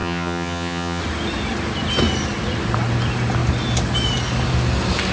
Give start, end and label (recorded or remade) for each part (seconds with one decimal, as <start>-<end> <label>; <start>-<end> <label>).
0.0-1.0 remade; 1.0-5.1 recorded